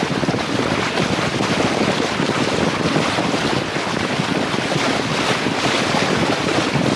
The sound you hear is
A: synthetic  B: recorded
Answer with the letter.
A